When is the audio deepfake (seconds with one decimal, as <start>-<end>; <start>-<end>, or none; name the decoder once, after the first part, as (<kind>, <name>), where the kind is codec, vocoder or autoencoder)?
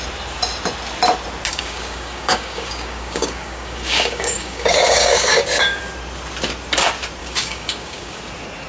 1.5-5.8 (codec, DAC); 7.2-8.2